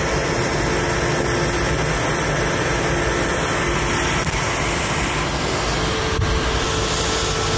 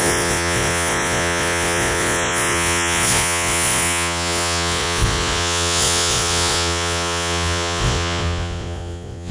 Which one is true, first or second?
first